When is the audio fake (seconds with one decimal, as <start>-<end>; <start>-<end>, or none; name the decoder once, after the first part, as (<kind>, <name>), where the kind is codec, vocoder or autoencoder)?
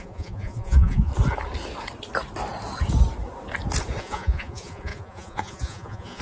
0.0-1.1 (vocoder, Vocos); 4.0-6.2